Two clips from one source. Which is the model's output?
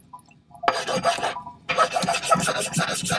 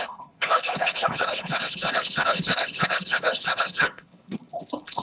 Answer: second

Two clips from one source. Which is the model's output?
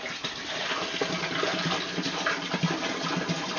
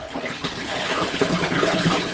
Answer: second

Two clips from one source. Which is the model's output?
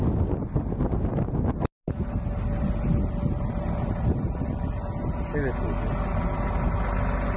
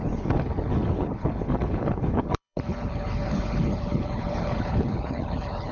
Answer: second